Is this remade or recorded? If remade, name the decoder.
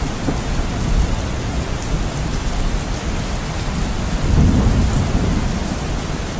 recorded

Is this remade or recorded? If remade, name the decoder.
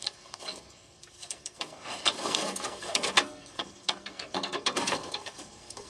remade, codec, SNAC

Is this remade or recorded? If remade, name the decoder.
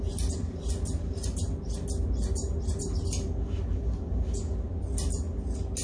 recorded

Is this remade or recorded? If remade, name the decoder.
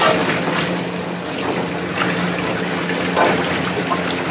recorded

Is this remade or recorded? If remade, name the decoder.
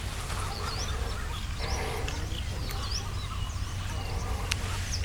recorded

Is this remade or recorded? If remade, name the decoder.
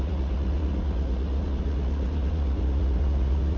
remade, vocoder, Vocos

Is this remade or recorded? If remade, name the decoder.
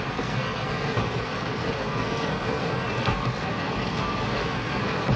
remade, codec, SNAC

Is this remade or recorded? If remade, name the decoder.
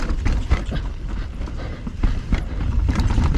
remade, vocoder, BigVGAN v2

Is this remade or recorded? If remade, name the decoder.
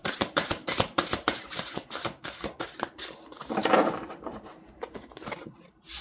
remade, vocoder, BigVGAN v2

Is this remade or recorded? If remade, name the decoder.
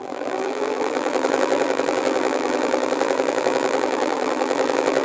remade, vocoder, BigVGAN v2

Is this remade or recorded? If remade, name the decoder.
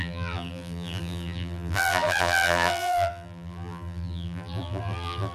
remade, vocoder, BigVGAN v2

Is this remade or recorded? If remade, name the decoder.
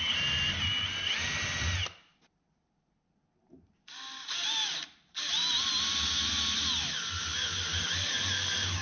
recorded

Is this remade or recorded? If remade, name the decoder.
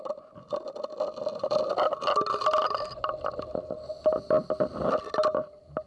recorded